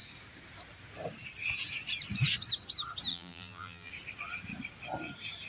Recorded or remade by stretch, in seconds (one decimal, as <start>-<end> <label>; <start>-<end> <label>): 0.0-3.1 recorded; 3.1-3.9 remade; 3.9-5.5 recorded

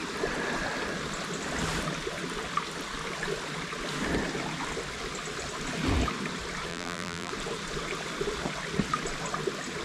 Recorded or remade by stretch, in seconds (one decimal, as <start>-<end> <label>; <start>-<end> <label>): 0.0-6.7 recorded; 6.7-7.3 remade; 7.3-9.8 recorded

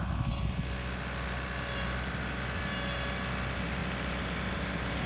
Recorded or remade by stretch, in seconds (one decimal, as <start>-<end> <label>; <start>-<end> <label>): 0.0-5.1 recorded

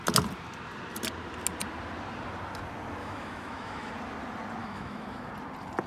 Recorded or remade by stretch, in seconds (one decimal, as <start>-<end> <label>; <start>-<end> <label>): 0.0-3.0 recorded; 3.0-3.9 remade; 3.9-4.6 recorded; 4.6-5.3 remade; 5.3-5.9 recorded

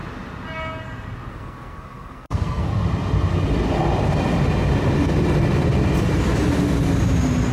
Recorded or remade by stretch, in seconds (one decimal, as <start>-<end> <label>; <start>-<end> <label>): 0.0-1.3 recorded; 1.3-2.7 remade; 2.7-7.5 recorded

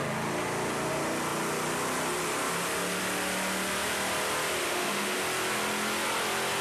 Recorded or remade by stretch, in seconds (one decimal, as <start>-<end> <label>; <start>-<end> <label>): 0.0-4.6 recorded; 4.6-5.2 remade; 5.2-6.6 recorded